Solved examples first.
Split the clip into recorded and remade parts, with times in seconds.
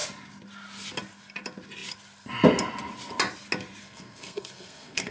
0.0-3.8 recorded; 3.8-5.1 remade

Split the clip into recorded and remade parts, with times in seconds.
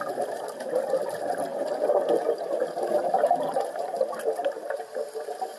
0.0-5.6 recorded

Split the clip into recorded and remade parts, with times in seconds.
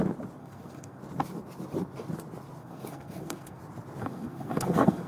0.0-0.4 recorded; 0.4-1.0 remade; 1.0-2.6 recorded; 2.6-3.6 remade; 3.6-4.0 recorded; 4.0-5.1 remade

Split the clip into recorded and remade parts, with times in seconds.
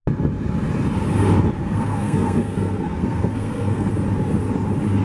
0.0-1.6 recorded; 1.6-3.9 remade; 3.9-5.0 recorded